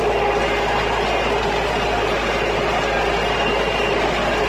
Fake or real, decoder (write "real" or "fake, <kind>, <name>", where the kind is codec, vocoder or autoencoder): real